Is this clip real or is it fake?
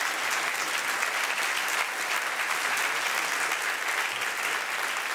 real